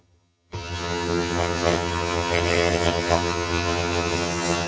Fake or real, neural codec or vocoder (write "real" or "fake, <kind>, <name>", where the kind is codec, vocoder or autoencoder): fake, vocoder, HiFi-GAN